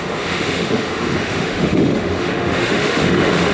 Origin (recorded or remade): remade